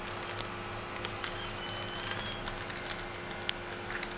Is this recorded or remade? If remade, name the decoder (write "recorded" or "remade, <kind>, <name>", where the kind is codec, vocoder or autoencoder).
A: recorded